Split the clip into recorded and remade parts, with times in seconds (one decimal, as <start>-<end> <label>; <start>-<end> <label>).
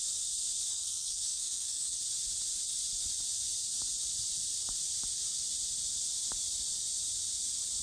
0.0-0.7 recorded; 0.7-2.0 remade; 2.0-7.8 recorded